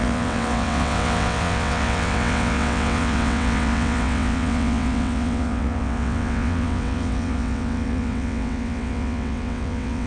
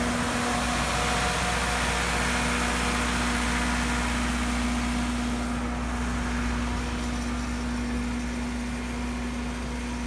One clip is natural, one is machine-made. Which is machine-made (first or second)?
first